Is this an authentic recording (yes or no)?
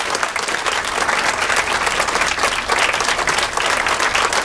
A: yes